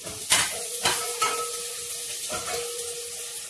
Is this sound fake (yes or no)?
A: no